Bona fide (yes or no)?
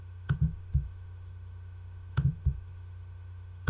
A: no